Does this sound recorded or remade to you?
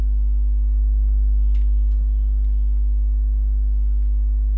recorded